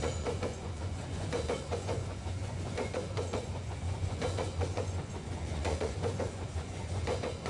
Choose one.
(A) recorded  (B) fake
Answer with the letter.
B